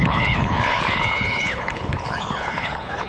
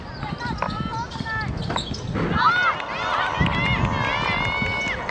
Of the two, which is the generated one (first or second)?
first